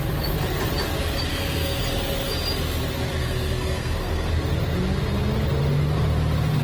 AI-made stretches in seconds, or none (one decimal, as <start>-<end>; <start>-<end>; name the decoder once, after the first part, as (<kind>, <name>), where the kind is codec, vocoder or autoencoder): 1.3-1.8 (codec, SNAC); 3.2-4.3